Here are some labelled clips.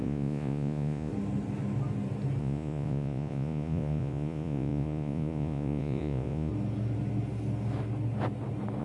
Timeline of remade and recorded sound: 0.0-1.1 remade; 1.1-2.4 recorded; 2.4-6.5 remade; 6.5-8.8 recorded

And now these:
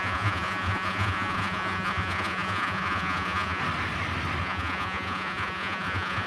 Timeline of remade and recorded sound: 0.0-3.6 remade; 3.6-4.4 recorded; 4.4-6.3 remade

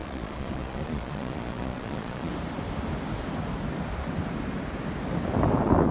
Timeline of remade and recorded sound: 0.0-2.3 remade; 2.3-5.9 recorded

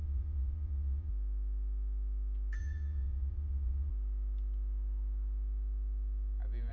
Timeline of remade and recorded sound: 0.0-1.1 remade; 1.1-2.6 recorded; 2.6-3.9 remade; 3.9-6.7 recorded

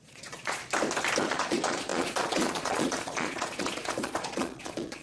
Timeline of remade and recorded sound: 0.0-0.6 remade; 0.6-1.2 recorded; 1.2-5.0 remade